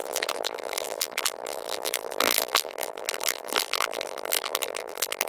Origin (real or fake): fake